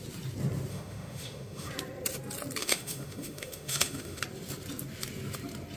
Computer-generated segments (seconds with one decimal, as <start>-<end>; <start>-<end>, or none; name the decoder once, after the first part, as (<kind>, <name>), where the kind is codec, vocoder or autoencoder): 0.7-1.7 (autoencoder, DAC-VAE); 2.6-4.2